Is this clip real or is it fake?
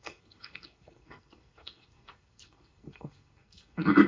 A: fake